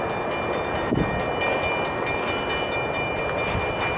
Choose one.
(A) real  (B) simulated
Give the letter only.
A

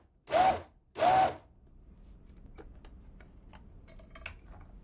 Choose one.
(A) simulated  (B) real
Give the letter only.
B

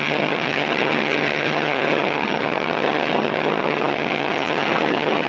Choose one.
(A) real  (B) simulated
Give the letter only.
B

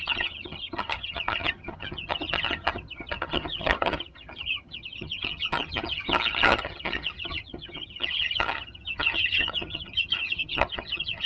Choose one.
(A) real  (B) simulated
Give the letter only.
B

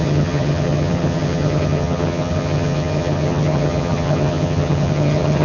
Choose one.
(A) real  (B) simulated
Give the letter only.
B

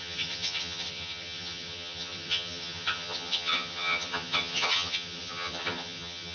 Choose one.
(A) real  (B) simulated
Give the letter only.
B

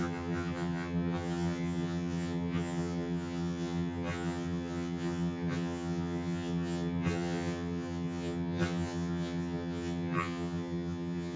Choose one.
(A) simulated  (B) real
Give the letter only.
A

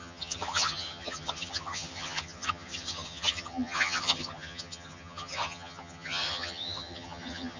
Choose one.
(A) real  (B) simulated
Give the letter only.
B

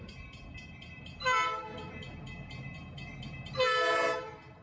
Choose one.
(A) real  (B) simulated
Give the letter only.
A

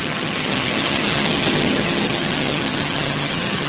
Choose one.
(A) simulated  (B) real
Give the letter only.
A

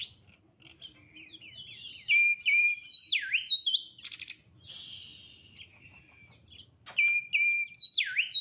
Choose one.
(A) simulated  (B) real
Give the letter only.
B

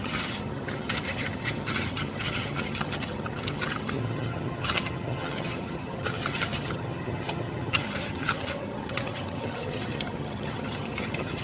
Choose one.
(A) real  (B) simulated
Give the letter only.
B